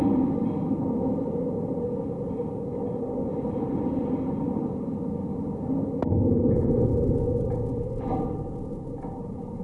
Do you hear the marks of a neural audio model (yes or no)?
no